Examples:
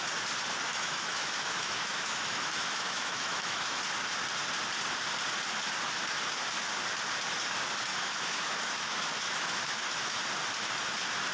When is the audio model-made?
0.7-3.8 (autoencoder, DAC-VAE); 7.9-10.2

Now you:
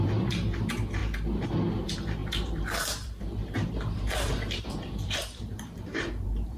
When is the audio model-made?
0.0-1.0 (vocoder, BigVGAN v2); 1.7-6.6

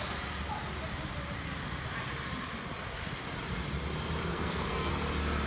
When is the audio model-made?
4.3-4.9 (codec, SNAC)

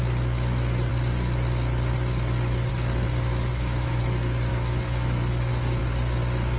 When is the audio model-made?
3.5-4.0 (autoencoder, DAC-VAE); 4.5-5.8

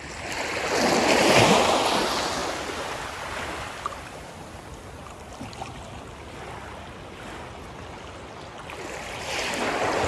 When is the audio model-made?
none

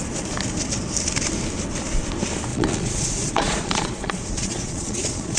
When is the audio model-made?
2.5-5.4 (vocoder, Vocos)